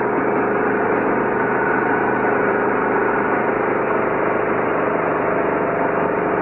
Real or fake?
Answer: real